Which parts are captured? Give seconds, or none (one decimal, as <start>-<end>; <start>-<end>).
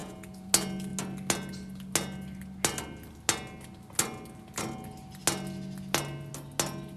0.5-7.0